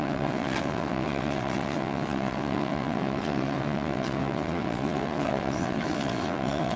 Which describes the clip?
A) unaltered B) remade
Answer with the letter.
B